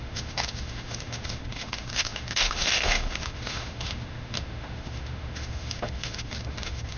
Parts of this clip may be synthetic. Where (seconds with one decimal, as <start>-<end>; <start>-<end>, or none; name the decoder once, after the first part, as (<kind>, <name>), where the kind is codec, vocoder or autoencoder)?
0.0-7.0 (autoencoder, DAC-VAE)